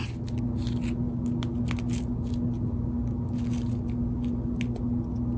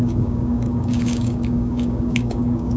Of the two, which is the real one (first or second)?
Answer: first